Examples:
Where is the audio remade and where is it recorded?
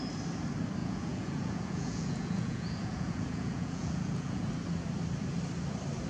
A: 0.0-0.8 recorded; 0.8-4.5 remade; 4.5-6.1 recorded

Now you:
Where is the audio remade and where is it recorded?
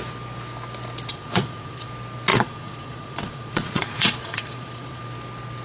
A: 0.0-1.1 recorded; 1.1-1.9 remade; 1.9-2.3 recorded; 2.3-5.0 remade; 5.0-5.6 recorded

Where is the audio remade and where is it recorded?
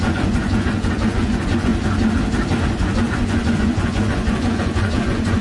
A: 0.0-1.7 remade; 1.7-2.6 recorded; 2.6-5.4 remade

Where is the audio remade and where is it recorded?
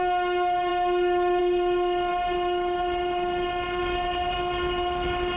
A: 0.0-5.4 recorded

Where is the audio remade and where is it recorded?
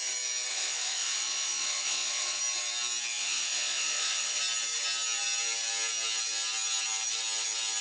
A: 0.0-0.5 recorded; 0.5-2.4 remade; 2.4-3.2 recorded; 3.2-4.4 remade; 4.4-7.8 recorded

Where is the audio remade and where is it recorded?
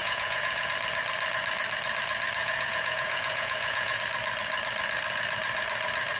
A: 0.0-0.7 remade; 0.7-2.4 recorded; 2.4-4.0 remade; 4.0-6.2 recorded